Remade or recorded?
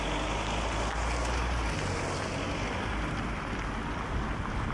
recorded